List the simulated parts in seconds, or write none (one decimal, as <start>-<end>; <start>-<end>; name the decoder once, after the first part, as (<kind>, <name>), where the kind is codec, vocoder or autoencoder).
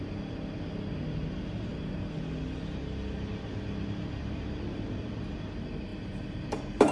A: 5.9-6.9 (vocoder, BigVGAN v2)